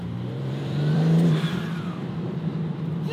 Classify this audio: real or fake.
fake